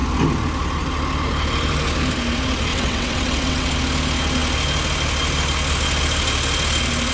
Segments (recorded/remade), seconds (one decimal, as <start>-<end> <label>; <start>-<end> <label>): 0.0-2.7 recorded; 2.7-3.7 remade; 3.7-7.1 recorded